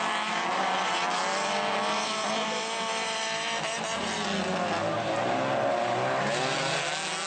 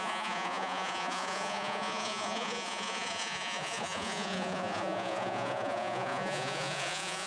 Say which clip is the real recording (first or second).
first